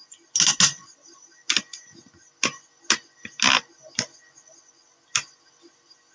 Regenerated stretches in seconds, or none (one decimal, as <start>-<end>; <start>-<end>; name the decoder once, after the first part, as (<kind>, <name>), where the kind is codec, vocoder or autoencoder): none